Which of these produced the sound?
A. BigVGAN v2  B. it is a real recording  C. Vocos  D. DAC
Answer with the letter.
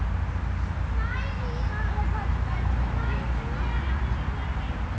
B